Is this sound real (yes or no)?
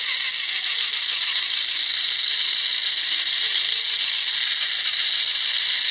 yes